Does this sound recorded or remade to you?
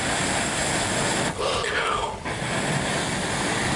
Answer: recorded